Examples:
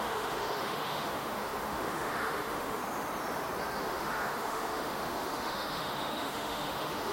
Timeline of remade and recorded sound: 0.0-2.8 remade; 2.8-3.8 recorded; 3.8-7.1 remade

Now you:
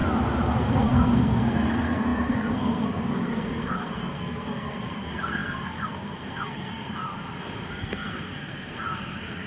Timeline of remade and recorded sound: 0.0-0.6 recorded; 0.6-7.1 remade; 7.1-7.8 recorded; 7.8-9.5 remade

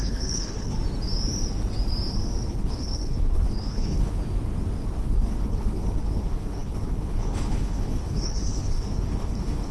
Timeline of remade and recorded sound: 0.0-0.8 remade; 0.8-2.5 recorded; 2.5-4.2 remade; 4.2-5.0 recorded; 5.0-9.7 remade

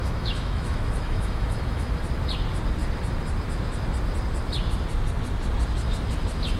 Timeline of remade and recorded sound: 0.0-2.0 remade; 2.0-6.6 recorded

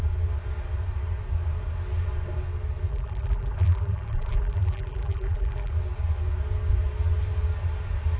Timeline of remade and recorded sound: 0.0-2.9 recorded; 2.9-5.7 remade; 5.7-8.2 recorded

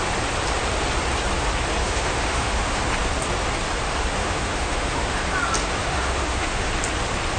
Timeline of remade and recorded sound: 0.0-1.8 recorded; 1.8-2.8 remade; 2.8-4.2 recorded; 4.2-5.2 remade; 5.2-5.8 recorded; 5.8-6.7 remade; 6.7-7.4 recorded

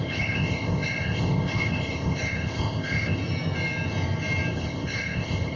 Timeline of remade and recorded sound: 0.0-3.2 remade; 3.2-4.5 recorded; 4.5-5.6 remade